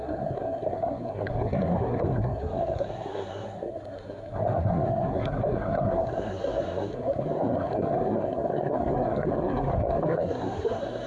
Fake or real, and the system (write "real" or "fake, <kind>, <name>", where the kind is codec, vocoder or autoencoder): fake, codec, SNAC